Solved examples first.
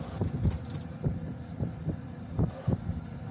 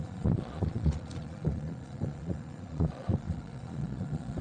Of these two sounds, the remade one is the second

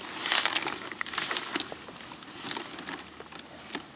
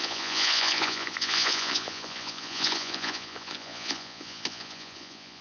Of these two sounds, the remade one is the second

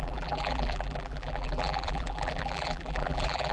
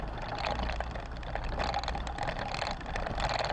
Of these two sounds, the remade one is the first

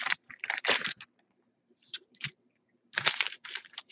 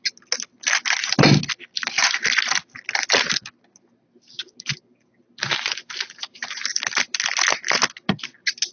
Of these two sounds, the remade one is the first